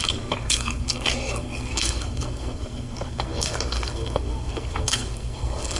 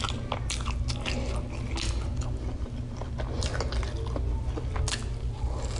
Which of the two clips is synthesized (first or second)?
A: first